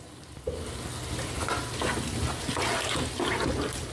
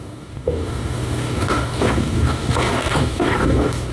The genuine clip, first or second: first